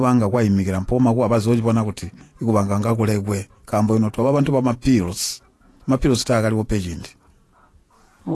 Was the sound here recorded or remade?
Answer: remade